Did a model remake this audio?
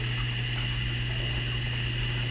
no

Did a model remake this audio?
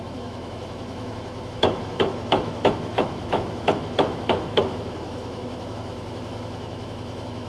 yes